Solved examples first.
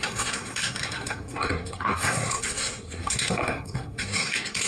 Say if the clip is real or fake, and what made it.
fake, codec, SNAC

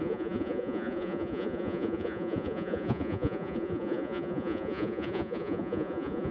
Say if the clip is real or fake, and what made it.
fake, vocoder, Vocos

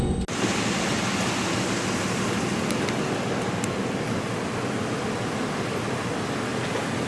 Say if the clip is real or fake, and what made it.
real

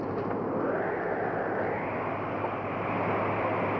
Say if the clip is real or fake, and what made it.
real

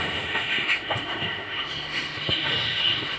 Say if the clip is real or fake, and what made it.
fake, autoencoder, DAC-VAE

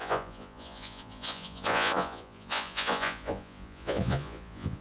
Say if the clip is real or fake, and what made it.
fake, vocoder, Vocos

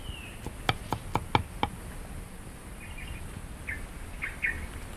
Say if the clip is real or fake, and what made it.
real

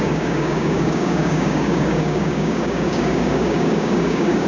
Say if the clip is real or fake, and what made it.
fake, codec, DAC